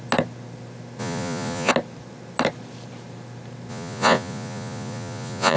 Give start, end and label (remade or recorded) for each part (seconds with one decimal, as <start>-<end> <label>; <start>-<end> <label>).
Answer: 0.0-1.0 recorded; 1.0-1.7 remade; 1.7-3.7 recorded; 3.7-5.6 remade